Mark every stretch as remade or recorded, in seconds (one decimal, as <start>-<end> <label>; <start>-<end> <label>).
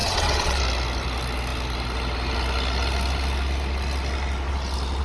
0.0-0.6 remade; 0.6-5.0 recorded